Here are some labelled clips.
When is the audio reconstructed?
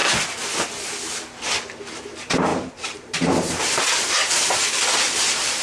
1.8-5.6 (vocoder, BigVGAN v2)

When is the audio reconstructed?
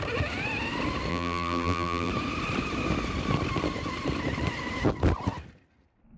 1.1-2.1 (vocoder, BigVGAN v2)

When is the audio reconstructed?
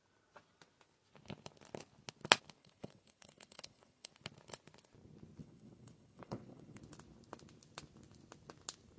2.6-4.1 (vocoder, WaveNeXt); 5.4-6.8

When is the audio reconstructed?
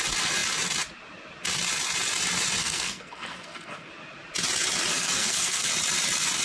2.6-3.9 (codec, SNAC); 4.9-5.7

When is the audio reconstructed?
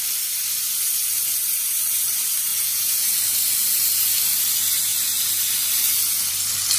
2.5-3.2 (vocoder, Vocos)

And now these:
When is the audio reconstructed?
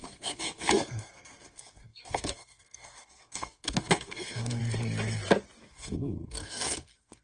0.0-4.6 (codec, SNAC); 5.6-7.2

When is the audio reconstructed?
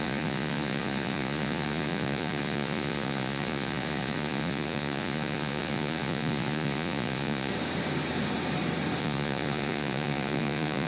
0.0-7.5 (vocoder, Vocos); 9.0-10.9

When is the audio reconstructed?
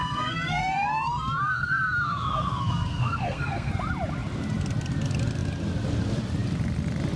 0.0-3.7 (codec, SNAC)